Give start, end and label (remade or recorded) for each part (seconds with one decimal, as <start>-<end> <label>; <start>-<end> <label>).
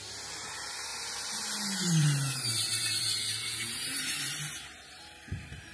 0.0-0.9 recorded; 0.9-4.3 remade; 4.3-5.7 recorded